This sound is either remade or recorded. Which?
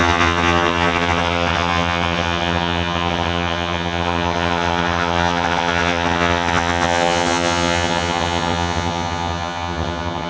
remade